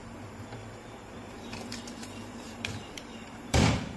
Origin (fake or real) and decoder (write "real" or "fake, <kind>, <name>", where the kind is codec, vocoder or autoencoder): fake, vocoder, BigVGAN v2